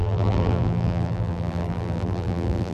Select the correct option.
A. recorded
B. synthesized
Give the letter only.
B